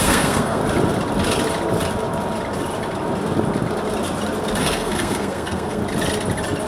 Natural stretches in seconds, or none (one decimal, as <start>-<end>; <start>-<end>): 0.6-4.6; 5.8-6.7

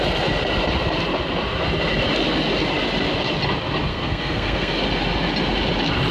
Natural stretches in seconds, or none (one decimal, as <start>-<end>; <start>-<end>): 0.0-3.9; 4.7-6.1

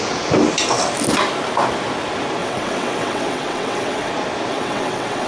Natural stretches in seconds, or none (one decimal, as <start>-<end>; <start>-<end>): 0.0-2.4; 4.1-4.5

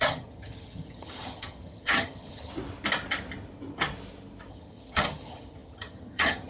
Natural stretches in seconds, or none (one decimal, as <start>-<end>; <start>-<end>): 2.5-4.5

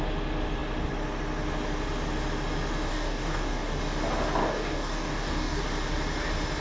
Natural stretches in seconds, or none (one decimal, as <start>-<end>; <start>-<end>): 0.0-2.9; 3.8-4.4; 5.6-6.6

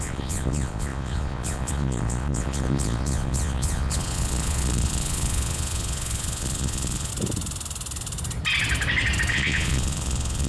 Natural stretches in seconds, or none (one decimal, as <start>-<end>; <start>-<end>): 7.1-9.3

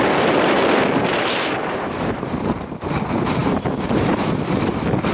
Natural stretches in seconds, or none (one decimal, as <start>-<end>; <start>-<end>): 0.0-1.6; 2.2-3.4; 4.4-5.1

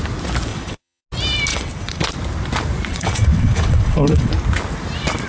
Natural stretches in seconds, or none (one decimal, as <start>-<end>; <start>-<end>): 0.0-0.5; 1.0-1.5; 2.0-2.9; 4.3-5.3